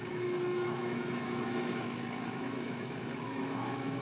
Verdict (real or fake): fake